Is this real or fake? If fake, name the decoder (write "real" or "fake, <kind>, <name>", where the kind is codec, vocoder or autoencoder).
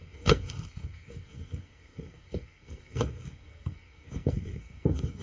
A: fake, codec, SNAC